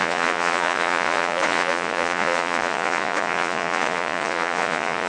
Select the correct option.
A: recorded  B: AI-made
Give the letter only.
B